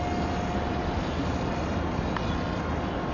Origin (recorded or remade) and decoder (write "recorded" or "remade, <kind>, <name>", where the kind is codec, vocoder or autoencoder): recorded